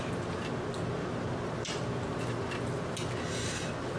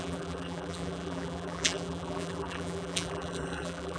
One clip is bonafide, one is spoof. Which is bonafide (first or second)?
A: first